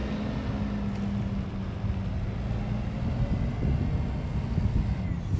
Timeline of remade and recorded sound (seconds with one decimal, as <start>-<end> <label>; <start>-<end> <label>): 0.0-5.4 recorded